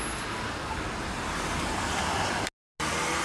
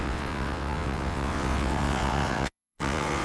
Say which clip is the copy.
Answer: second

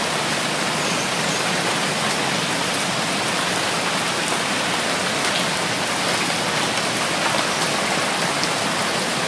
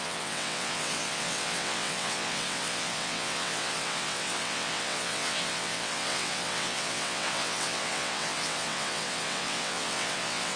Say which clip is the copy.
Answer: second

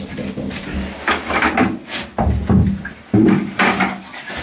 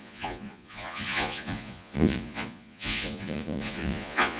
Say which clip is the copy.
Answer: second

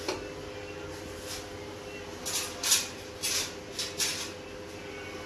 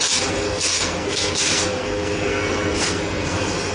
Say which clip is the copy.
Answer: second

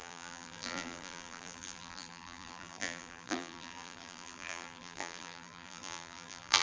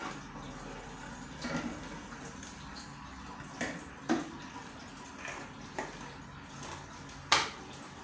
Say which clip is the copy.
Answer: first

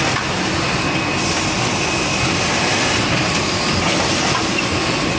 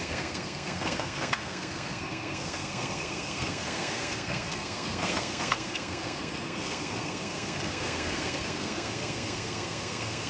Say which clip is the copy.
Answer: second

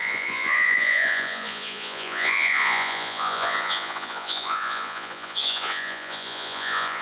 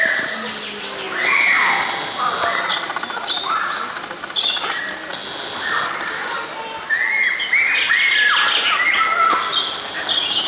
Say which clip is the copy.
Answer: first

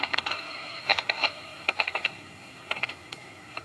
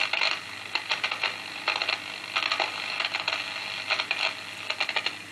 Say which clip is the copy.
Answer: first